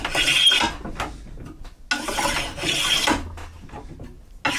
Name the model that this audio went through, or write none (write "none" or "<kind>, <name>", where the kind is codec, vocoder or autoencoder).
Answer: none